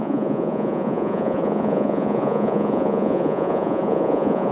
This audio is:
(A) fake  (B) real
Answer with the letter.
A